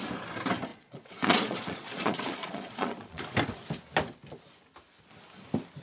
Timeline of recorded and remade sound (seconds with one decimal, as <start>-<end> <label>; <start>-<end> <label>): 0.0-0.7 recorded; 0.7-3.2 remade; 3.2-5.8 recorded